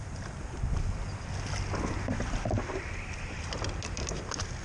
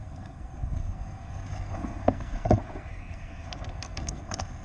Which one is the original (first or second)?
first